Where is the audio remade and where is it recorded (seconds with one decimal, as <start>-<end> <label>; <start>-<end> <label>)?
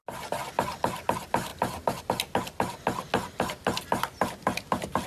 0.0-1.5 recorded; 1.5-2.0 remade; 2.0-5.1 recorded